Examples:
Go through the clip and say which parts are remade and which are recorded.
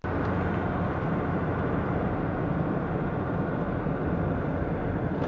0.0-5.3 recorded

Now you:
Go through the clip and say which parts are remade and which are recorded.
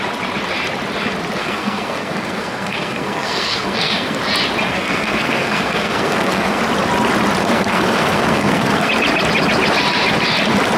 0.0-1.4 recorded; 1.4-4.2 remade; 4.2-4.7 recorded; 4.7-6.6 remade; 6.6-7.4 recorded; 7.4-8.9 remade; 8.9-10.8 recorded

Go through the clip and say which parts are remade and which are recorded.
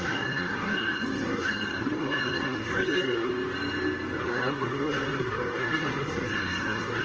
0.0-3.3 remade; 3.3-4.2 recorded; 4.2-7.0 remade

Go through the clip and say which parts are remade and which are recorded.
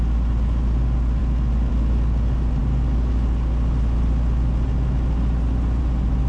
0.0-6.3 recorded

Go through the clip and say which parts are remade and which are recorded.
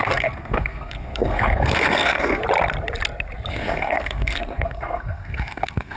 0.0-2.4 remade; 2.4-3.5 recorded; 3.5-6.0 remade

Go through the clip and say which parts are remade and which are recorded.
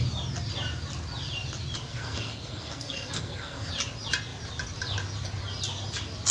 0.0-1.9 recorded; 1.9-3.7 remade; 3.7-6.3 recorded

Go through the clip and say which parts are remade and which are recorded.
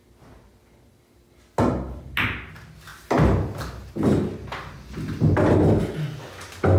0.0-6.8 recorded